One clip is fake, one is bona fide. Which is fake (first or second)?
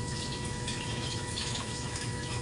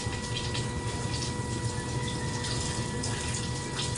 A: first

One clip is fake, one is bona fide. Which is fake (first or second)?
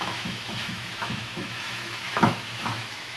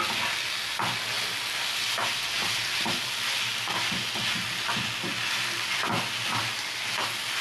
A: first